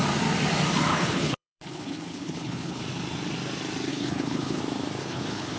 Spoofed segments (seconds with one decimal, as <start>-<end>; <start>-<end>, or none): 0.9-2.8; 3.9-4.6; 5.0-5.6